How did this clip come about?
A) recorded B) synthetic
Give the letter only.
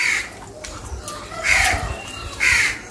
B